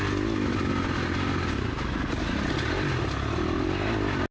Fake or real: real